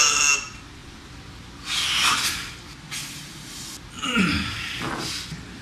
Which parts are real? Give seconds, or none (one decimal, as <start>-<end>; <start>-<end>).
0.0-5.6